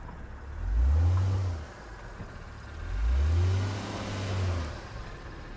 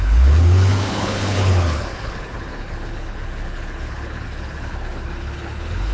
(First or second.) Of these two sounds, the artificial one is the second